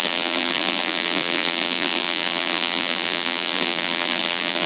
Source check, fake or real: fake